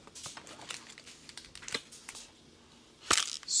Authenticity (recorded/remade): recorded